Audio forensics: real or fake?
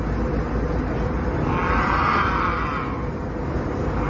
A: real